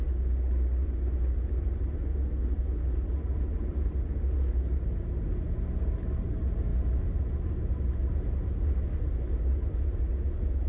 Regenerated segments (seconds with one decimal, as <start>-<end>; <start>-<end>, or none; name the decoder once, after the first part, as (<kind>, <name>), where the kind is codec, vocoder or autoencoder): none